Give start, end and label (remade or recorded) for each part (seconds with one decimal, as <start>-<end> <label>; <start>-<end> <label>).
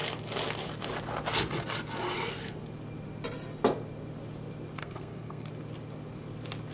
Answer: 0.0-2.2 recorded; 2.2-2.7 remade; 2.7-4.8 recorded; 4.8-5.5 remade; 5.5-6.7 recorded